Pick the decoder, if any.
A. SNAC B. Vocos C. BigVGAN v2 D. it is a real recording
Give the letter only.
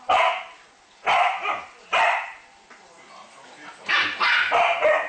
D